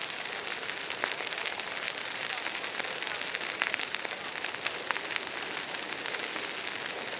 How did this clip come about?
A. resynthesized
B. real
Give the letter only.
B